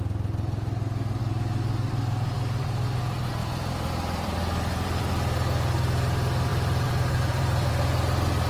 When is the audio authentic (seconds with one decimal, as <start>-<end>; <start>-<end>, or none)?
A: 0.0-1.2; 3.0-3.4; 5.1-6.5; 7.7-8.5